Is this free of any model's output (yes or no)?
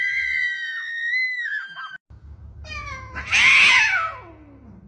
yes